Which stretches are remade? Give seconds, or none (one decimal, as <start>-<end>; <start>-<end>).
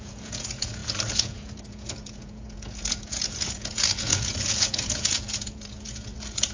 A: 0.0-6.5